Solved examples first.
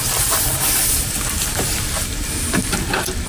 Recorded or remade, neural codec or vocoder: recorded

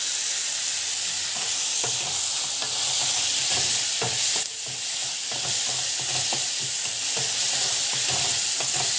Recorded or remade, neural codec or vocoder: recorded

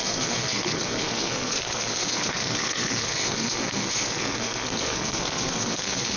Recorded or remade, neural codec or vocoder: remade, codec, SNAC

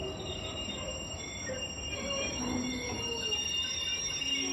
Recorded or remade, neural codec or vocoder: recorded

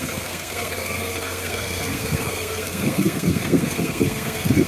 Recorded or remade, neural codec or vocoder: remade, codec, SNAC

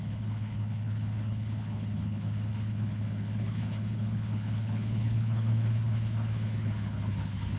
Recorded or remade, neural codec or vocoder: remade, codec, HILCodec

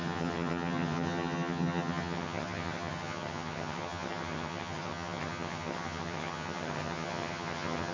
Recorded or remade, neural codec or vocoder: remade, vocoder, HiFi-GAN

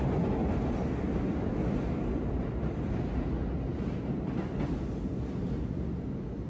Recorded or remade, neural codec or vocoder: recorded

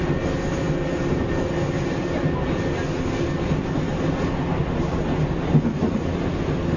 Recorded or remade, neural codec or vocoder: recorded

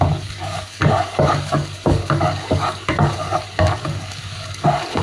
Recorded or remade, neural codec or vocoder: remade, codec, DAC